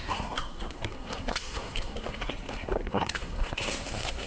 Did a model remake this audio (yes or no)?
yes